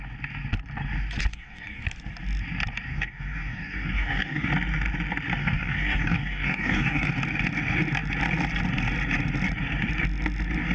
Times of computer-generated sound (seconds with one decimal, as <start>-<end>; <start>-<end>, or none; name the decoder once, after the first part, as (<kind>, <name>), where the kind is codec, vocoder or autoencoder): 1.3-1.8 (codec, DAC); 2.9-4.5; 5.4-7.1